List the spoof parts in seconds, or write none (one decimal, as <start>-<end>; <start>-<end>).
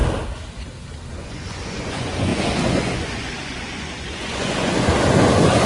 1.1-5.7